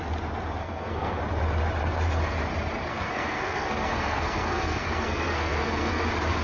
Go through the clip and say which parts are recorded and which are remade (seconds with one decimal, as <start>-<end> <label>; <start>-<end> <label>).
0.0-0.6 recorded; 0.6-1.2 remade; 1.2-2.9 recorded; 2.9-6.0 remade; 6.0-6.4 recorded